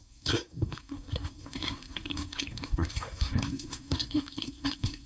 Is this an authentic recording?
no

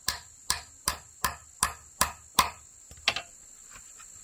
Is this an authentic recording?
yes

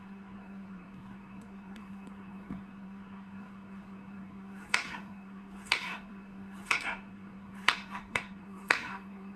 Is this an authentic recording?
no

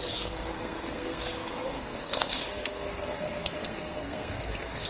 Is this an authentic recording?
no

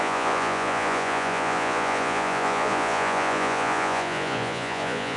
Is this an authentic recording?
no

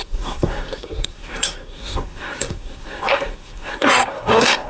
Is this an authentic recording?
no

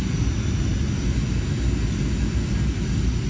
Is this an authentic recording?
yes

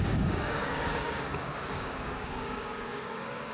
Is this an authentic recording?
no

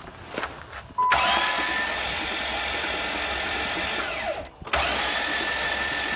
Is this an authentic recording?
yes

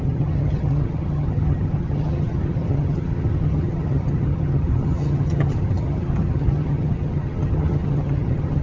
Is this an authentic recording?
no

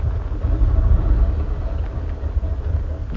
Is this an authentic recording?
yes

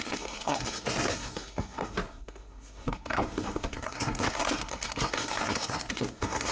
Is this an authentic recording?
no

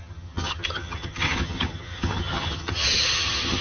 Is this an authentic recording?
no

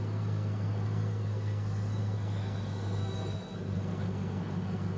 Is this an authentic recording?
no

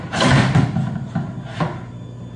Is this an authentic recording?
yes